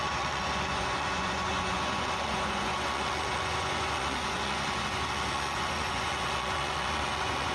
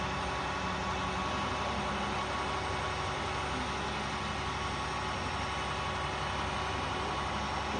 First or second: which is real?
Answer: second